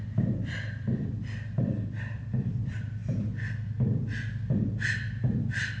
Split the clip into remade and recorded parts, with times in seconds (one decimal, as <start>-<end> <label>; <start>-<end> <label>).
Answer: 0.0-3.0 remade; 3.0-5.8 recorded